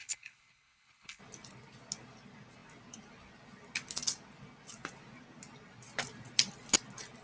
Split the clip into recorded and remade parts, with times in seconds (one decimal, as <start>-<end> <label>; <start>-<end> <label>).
0.0-1.2 remade; 1.2-7.2 recorded